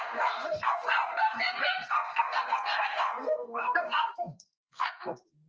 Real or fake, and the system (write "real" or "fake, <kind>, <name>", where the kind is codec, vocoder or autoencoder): fake, codec, SNAC